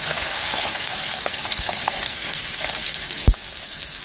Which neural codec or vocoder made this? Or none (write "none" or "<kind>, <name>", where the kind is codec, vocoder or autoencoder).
codec, SNAC